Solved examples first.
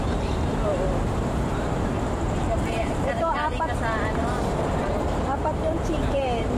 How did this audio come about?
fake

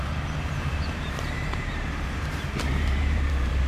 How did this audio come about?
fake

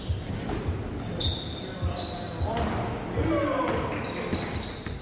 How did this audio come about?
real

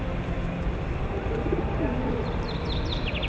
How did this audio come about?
real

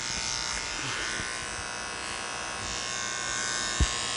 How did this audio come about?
real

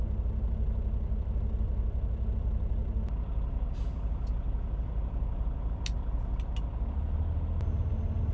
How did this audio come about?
real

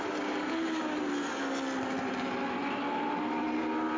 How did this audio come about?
real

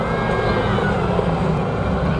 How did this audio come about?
real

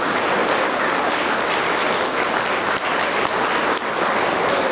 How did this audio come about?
real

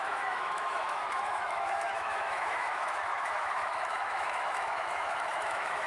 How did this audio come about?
fake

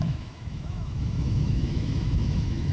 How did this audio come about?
fake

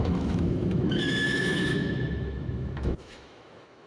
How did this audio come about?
fake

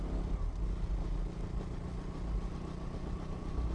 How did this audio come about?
real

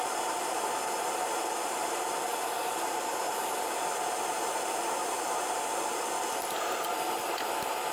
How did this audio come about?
real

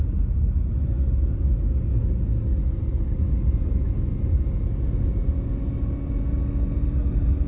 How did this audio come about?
real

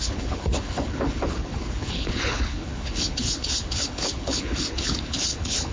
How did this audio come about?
fake